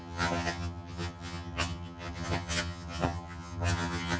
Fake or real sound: fake